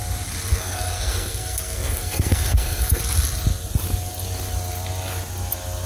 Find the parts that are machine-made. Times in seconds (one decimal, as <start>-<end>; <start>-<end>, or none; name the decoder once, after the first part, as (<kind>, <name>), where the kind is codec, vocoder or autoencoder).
0.5-3.0 (codec, SNAC)

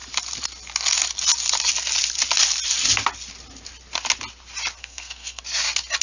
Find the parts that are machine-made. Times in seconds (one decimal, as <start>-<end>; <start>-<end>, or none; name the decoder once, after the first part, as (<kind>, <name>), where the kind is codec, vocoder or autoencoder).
4.8-5.4 (codec, SNAC)

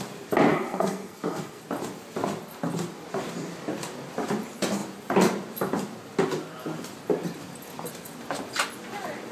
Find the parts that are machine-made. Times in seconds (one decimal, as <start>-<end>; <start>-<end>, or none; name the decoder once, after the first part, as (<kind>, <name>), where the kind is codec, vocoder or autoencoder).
0.5-1.6 (codec, SNAC)